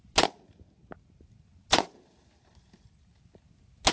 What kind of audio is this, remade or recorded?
recorded